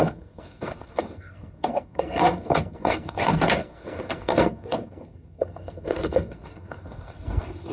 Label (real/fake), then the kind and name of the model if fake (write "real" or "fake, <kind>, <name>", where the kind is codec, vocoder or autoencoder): fake, codec, SNAC